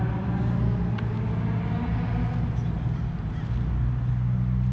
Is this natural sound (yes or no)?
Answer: yes